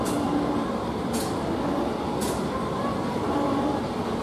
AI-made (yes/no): no